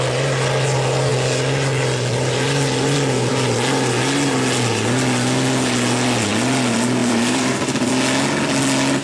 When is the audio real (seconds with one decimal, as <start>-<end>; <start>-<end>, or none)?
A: 0.0-7.0; 7.9-9.0